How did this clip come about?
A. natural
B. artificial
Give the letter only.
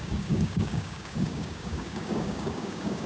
B